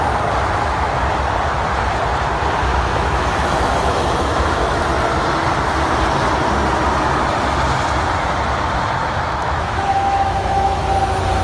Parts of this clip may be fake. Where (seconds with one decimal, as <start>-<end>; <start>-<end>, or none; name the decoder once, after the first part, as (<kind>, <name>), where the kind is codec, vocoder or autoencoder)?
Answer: 2.7-4.8 (autoencoder, DAC-VAE); 9.0-10.8